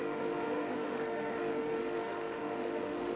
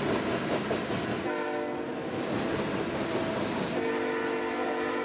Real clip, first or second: second